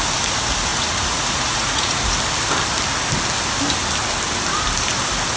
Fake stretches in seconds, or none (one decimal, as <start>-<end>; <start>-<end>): 0.7-2.2